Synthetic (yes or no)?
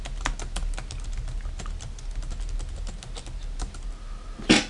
no